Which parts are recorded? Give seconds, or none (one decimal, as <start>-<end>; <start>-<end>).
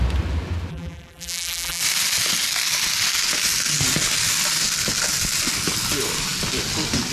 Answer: 0.0-0.7; 1.8-7.1